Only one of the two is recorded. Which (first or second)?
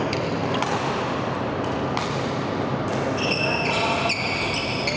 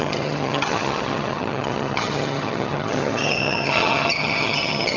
first